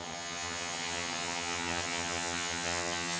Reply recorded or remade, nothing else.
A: remade